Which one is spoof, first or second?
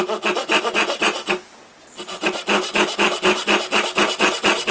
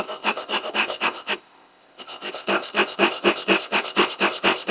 second